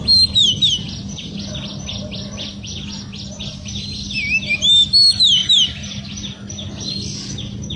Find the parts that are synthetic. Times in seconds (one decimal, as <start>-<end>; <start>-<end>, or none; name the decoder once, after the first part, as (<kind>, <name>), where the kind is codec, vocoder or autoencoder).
none